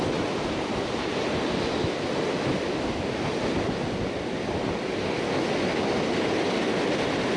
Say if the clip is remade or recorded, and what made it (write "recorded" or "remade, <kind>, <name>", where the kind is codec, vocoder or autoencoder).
recorded